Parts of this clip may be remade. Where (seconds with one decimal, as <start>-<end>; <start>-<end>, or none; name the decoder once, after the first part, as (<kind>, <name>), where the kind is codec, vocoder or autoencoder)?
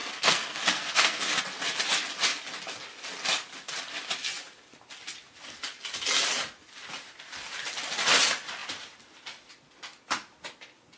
0.0-1.4 (codec, SNAC)